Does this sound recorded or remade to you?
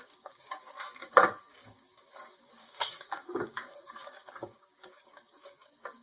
remade